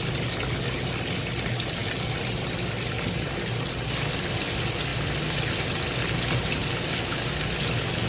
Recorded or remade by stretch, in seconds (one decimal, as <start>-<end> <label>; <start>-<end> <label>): 0.0-4.9 recorded; 4.9-5.7 remade; 5.7-8.1 recorded